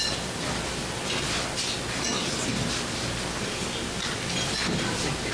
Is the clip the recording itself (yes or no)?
yes